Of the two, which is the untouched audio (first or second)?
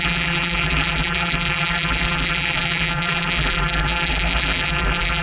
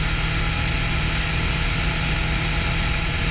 second